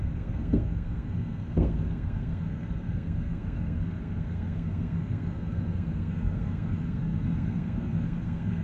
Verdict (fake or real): fake